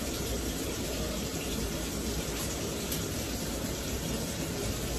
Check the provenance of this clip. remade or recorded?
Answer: remade